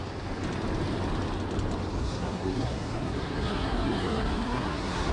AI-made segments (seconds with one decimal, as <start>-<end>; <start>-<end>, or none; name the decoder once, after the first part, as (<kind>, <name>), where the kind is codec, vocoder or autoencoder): 2.0-5.1 (codec, SNAC)